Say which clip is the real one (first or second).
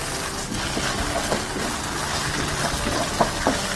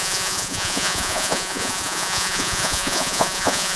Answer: first